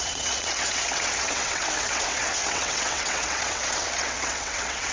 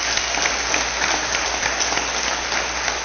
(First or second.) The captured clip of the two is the second